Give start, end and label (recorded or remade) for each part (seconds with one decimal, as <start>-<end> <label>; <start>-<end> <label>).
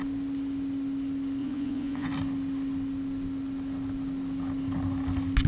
0.0-1.4 recorded; 1.4-2.1 remade; 2.1-5.5 recorded